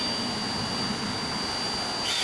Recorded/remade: recorded